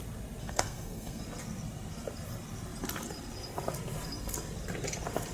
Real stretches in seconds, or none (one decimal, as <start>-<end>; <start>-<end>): 0.0-0.4; 1.2-5.3